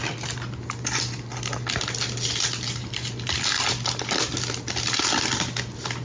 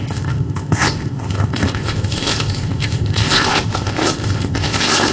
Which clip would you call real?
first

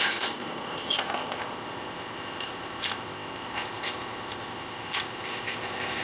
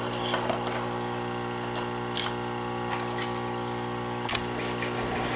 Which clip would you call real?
second